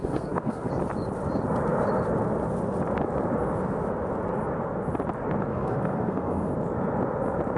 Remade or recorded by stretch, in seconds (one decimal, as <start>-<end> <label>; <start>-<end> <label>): 0.0-0.7 remade; 0.7-5.5 recorded; 5.5-6.5 remade; 6.5-7.6 recorded

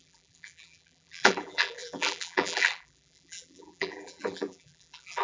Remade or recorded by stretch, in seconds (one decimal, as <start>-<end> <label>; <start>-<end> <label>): 0.0-5.2 remade

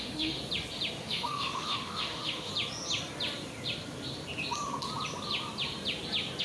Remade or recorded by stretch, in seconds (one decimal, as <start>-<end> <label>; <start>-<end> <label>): 0.0-0.4 remade; 0.4-1.0 recorded; 1.0-2.5 remade; 2.5-6.4 recorded

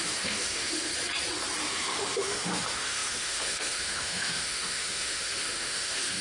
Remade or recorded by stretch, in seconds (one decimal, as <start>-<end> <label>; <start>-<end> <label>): 0.0-0.9 remade; 0.9-1.6 recorded; 1.6-6.2 remade

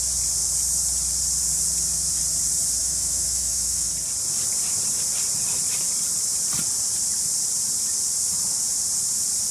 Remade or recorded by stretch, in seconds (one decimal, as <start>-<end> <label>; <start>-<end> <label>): 0.0-2.8 recorded; 2.8-3.9 remade; 3.9-9.5 recorded

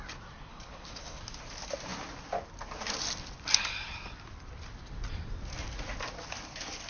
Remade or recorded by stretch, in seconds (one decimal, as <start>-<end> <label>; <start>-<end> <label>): 0.0-0.5 recorded; 0.5-1.2 remade; 1.2-6.9 recorded

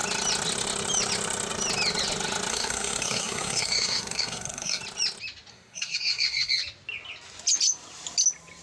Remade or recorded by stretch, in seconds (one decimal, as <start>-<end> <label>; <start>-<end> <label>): 0.0-2.5 recorded; 2.5-4.8 remade; 4.8-5.5 recorded; 5.5-6.6 remade; 6.6-8.6 recorded

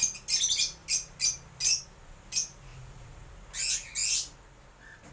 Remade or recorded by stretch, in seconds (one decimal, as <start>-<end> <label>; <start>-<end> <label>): 0.0-2.7 recorded; 2.7-3.3 remade; 3.3-5.1 recorded